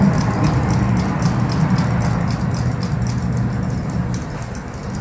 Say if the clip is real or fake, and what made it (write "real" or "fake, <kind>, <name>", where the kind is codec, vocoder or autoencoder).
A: real